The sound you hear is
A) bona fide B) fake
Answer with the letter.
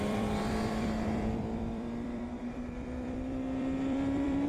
B